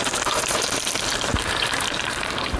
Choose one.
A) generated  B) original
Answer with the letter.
A